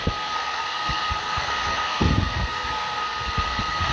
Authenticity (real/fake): fake